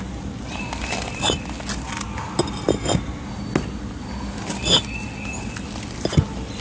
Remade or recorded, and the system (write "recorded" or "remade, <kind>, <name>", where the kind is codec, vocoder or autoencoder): recorded